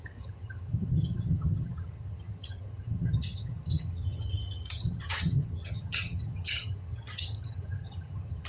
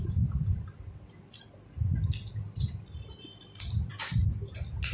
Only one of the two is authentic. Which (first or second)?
second